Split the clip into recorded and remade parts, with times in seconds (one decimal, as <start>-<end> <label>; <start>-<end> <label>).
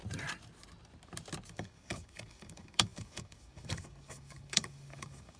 0.0-1.5 recorded; 1.5-5.4 remade